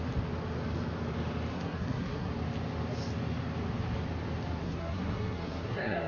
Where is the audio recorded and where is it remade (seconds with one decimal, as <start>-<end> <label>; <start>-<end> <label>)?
0.0-1.5 recorded; 1.5-2.3 remade; 2.3-4.6 recorded; 4.6-6.1 remade